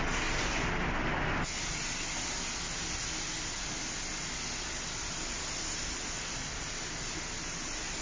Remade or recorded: recorded